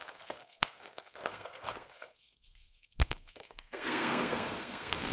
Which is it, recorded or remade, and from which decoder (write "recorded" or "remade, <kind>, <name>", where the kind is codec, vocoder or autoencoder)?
remade, codec, SNAC